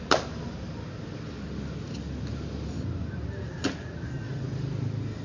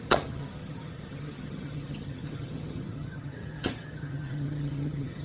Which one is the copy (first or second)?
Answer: second